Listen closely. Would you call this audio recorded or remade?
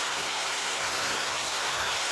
remade